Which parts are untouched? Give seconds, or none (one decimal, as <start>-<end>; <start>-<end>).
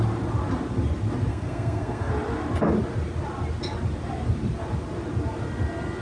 0.0-1.3; 2.1-6.0